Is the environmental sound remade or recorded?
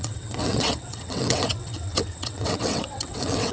remade